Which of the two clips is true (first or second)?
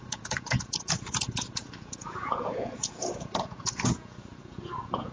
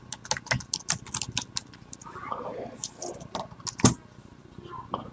second